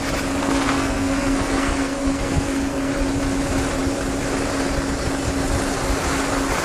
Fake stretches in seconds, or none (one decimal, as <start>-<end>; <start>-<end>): 0.4-2.9